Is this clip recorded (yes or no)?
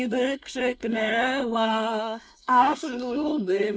no